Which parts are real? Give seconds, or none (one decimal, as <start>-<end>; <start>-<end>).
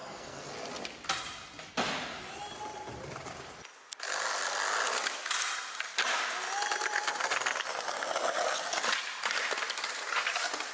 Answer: 0.5-10.7